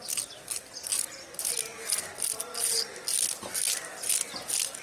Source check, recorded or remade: recorded